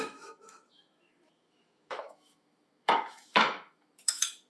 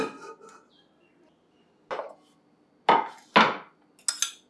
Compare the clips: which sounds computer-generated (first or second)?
first